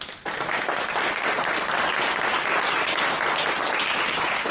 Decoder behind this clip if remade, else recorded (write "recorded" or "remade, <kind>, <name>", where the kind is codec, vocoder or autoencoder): recorded